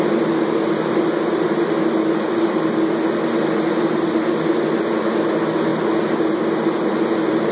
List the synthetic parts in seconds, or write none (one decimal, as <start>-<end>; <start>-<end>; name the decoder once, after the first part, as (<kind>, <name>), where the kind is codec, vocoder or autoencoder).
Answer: none